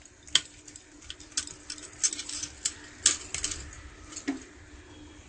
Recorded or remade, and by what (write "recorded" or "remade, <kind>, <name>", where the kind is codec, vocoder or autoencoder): recorded